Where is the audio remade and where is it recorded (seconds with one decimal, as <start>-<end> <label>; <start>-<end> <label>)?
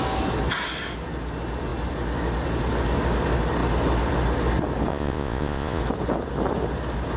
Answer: 0.0-4.9 recorded; 4.9-5.8 remade; 5.8-7.2 recorded